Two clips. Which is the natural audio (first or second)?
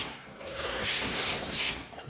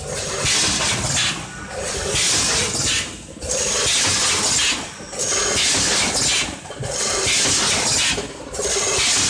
second